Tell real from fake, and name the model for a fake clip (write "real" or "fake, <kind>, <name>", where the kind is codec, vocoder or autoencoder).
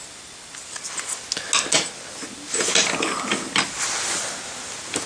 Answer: real